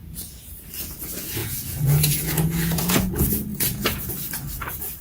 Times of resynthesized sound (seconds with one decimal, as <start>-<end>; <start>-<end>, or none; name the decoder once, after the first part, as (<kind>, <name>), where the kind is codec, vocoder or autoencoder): 0.0-0.5 (vocoder, Vocos); 1.4-3.1; 3.5-4.1